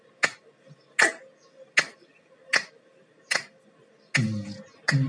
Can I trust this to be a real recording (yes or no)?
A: yes